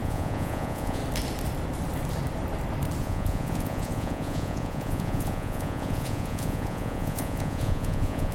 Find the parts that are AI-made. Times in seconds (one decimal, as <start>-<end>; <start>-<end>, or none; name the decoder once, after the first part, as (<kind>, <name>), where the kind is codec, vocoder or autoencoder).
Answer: 0.0-1.0 (vocoder, Vocos); 3.0-8.3